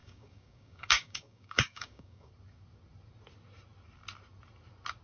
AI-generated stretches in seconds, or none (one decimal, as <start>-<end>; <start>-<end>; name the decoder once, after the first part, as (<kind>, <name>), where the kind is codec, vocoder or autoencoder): 0.0-2.3 (codec, DAC)